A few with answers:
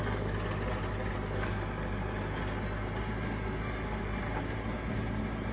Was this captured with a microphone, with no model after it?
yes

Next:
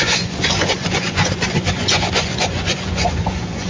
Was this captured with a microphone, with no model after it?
no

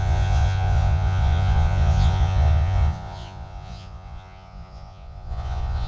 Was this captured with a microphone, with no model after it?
no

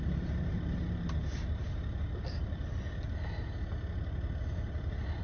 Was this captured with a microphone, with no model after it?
yes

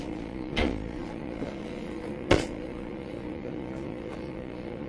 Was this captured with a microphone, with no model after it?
no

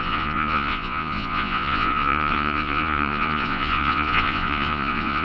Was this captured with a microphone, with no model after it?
no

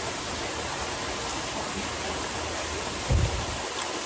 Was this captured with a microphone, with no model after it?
yes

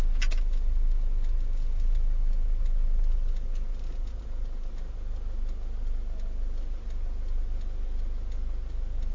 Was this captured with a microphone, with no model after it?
yes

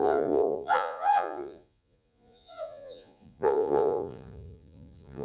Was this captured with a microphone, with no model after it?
no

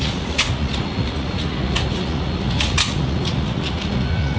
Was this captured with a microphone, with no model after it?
no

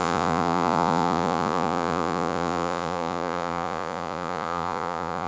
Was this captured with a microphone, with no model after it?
no